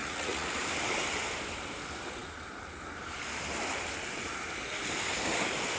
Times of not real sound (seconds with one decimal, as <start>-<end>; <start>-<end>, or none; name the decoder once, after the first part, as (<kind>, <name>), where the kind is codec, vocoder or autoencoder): 0.0-0.5 (vocoder, Vocos)